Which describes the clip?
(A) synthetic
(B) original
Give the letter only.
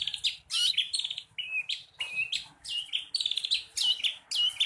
B